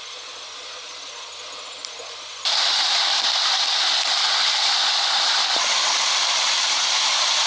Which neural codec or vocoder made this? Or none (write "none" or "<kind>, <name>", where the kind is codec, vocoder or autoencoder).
none